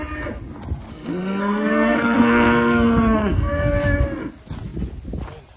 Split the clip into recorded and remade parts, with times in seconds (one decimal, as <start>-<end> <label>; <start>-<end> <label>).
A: 0.0-0.9 recorded; 0.9-4.0 remade; 4.0-5.6 recorded